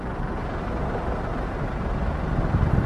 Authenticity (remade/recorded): recorded